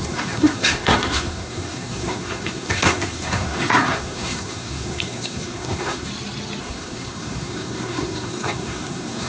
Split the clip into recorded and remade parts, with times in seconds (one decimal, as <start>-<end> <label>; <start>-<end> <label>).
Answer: 0.0-6.1 remade; 6.1-6.6 recorded; 6.6-9.3 remade